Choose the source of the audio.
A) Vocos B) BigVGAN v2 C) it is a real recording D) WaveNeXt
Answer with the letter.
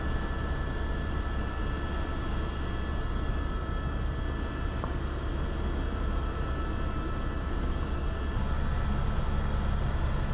C